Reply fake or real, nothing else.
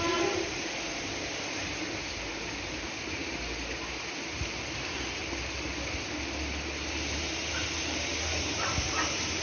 real